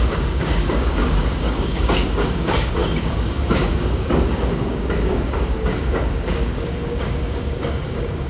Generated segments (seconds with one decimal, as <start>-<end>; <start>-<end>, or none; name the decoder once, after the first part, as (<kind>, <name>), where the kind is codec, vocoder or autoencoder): 0.0-8.3 (codec, DAC)